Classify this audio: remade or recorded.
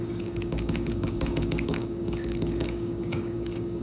remade